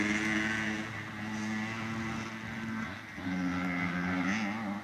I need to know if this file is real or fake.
real